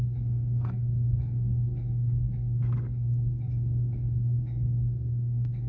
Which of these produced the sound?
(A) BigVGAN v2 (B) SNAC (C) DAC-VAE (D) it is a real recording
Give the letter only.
B